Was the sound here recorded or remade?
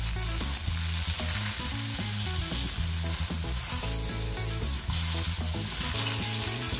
recorded